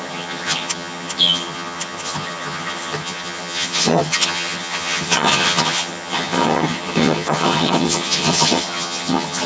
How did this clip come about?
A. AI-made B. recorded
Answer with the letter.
A